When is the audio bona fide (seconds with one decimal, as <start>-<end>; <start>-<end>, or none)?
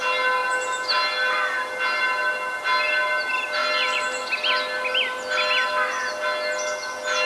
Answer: 0.0-7.3